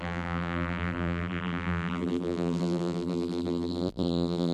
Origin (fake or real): fake